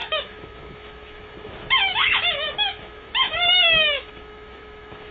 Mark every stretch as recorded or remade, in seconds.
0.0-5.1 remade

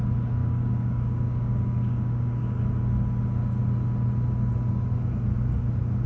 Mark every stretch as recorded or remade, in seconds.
0.0-0.4 recorded; 0.4-2.6 remade; 2.6-6.1 recorded